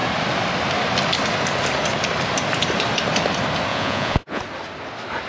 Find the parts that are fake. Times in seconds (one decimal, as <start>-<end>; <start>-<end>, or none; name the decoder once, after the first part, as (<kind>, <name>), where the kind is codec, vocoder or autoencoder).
3.7-4.4 (vocoder, Vocos)